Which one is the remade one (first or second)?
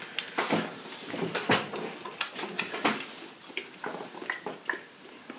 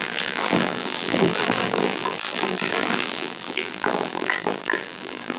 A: second